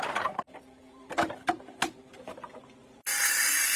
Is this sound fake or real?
fake